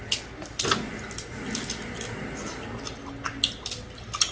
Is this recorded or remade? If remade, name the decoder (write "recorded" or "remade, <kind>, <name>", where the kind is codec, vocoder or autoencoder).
recorded